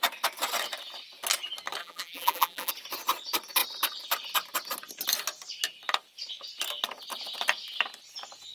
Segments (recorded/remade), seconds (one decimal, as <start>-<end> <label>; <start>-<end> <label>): 0.0-1.8 recorded; 1.8-2.7 remade; 2.7-8.5 recorded